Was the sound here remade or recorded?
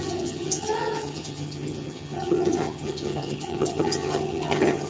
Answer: remade